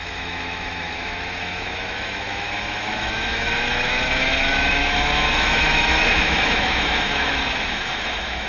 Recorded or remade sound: remade